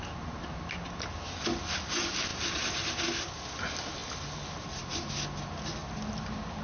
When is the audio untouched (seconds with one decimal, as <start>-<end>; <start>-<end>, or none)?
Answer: 0.0-6.6